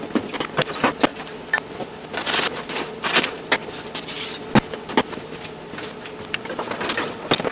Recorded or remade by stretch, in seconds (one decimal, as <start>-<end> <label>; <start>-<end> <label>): 0.0-7.5 recorded